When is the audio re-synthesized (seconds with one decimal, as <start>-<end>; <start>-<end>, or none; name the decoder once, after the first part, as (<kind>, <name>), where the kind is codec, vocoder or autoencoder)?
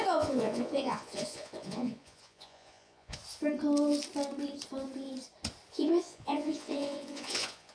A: 0.0-3.2 (vocoder, Vocos); 5.7-7.7